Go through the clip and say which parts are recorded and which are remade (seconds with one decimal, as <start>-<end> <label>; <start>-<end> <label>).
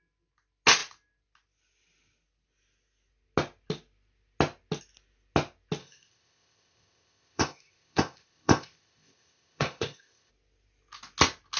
0.0-5.8 recorded; 5.8-10.3 remade; 10.3-11.6 recorded